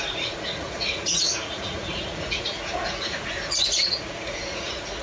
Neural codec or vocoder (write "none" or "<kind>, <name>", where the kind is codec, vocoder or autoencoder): vocoder, Vocos